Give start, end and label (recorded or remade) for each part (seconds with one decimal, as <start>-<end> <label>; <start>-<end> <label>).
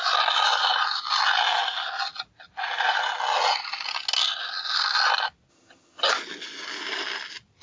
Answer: 0.0-5.5 recorded; 5.5-6.1 remade; 6.1-7.6 recorded